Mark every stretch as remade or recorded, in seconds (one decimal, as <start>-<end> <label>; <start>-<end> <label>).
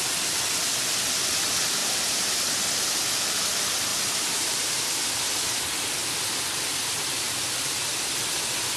0.0-1.8 recorded; 1.8-2.6 remade; 2.6-3.9 recorded; 3.9-4.8 remade; 4.8-8.8 recorded